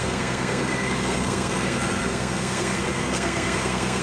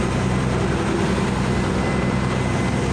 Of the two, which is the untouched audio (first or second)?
second